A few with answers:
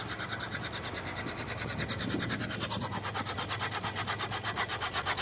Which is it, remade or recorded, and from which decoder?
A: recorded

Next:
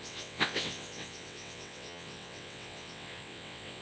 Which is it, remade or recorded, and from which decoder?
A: remade, vocoder, WaveNeXt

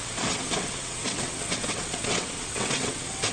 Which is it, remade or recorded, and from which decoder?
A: remade, vocoder, WaveNeXt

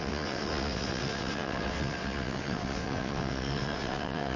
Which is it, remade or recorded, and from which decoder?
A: remade, vocoder, WaveNeXt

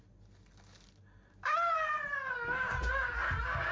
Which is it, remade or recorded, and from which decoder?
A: recorded